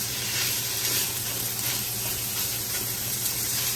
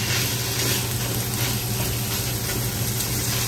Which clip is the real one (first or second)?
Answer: second